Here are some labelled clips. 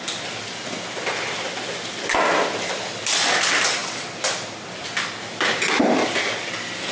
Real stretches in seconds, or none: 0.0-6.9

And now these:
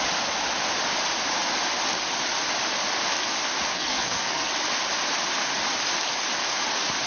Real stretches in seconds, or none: 0.0-3.7; 4.5-7.1

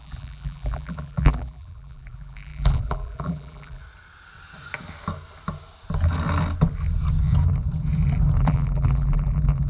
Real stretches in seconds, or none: 3.8-8.4